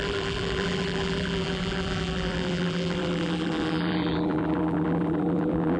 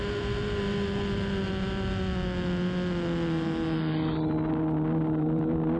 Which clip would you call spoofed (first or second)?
first